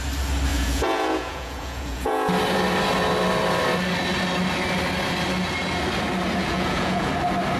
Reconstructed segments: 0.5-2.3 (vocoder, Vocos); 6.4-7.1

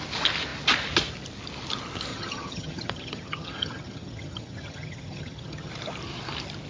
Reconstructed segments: 2.1-5.7 (vocoder, HiFi-GAN)